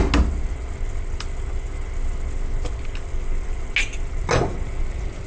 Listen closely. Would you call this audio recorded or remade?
recorded